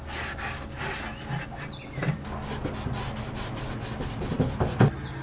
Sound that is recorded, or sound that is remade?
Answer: recorded